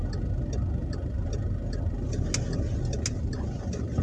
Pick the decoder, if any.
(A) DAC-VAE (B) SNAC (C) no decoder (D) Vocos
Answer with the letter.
C